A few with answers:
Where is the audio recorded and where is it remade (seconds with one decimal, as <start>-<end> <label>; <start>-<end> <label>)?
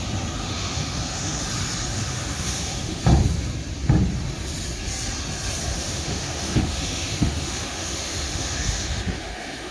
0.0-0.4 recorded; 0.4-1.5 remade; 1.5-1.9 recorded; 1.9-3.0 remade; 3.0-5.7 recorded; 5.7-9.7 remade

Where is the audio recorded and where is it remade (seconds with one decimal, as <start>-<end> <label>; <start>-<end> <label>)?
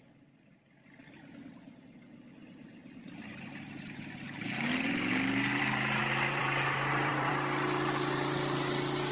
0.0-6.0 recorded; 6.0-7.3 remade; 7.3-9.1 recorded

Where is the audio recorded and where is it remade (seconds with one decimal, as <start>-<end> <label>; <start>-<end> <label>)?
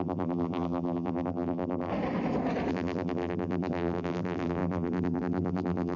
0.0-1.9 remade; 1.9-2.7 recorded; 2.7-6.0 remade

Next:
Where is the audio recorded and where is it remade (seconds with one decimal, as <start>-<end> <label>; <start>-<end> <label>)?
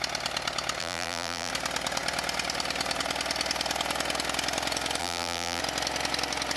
0.0-0.8 recorded; 0.8-1.5 remade; 1.5-5.0 recorded; 5.0-5.6 remade; 5.6-6.6 recorded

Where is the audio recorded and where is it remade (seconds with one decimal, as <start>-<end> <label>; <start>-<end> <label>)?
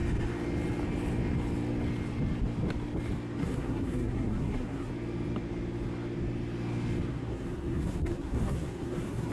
0.0-3.4 recorded; 3.4-4.9 remade; 4.9-7.1 recorded; 7.1-9.3 remade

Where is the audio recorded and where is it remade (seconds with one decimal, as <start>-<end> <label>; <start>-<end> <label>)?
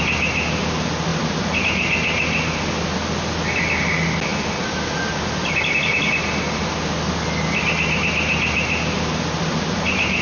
0.0-10.2 recorded